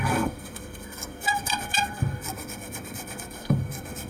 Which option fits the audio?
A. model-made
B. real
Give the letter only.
A